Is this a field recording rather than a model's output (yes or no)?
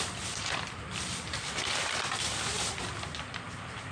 no